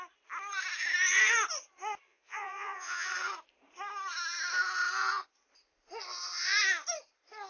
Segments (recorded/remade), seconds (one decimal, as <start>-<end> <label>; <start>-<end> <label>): 0.0-2.1 recorded; 2.1-3.1 remade; 3.1-7.5 recorded